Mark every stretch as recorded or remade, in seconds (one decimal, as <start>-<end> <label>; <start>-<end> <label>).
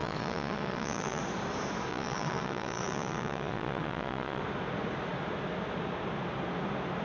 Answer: 0.0-1.2 remade; 1.2-1.9 recorded; 1.9-4.4 remade; 4.4-7.0 recorded